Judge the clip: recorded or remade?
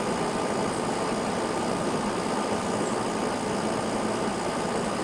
recorded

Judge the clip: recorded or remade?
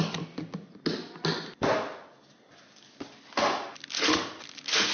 recorded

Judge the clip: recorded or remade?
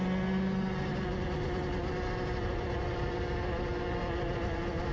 recorded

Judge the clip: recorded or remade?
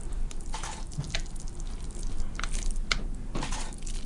recorded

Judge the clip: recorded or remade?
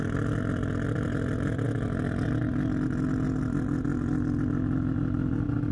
remade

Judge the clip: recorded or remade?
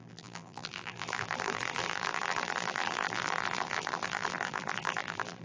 remade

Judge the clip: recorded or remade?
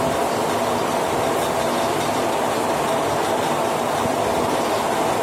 recorded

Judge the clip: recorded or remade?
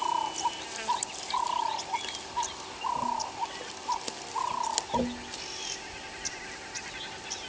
recorded